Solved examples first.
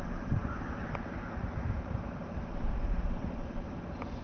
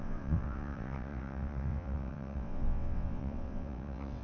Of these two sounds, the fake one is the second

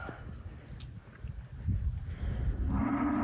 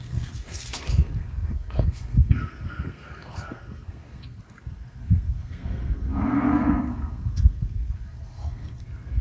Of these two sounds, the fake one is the second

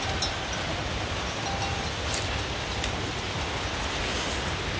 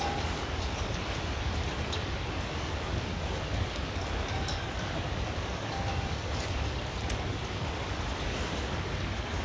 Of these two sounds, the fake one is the second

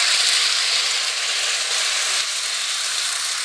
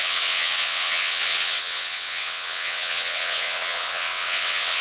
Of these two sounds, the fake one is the second